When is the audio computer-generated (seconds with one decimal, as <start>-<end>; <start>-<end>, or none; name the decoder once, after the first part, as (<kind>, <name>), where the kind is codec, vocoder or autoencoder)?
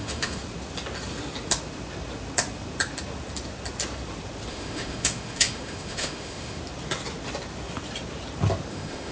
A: 0.0-0.4 (autoencoder, DAC-VAE); 4.5-6.6; 8.7-9.1